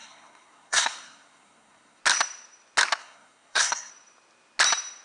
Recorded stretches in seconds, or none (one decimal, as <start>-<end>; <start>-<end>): 2.0-3.0; 3.9-5.0